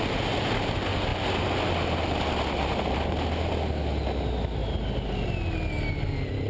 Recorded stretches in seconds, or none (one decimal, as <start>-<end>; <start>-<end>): 0.0-6.5